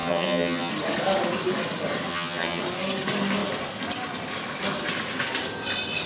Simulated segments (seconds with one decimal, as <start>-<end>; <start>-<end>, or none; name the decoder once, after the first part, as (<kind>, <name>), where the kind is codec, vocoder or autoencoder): 0.0-0.7 (vocoder, HiFi-GAN); 2.1-2.6